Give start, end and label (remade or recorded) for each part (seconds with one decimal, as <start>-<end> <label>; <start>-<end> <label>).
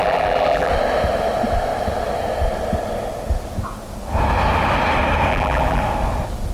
0.0-0.7 remade; 0.7-5.3 recorded; 5.3-5.8 remade; 5.8-6.5 recorded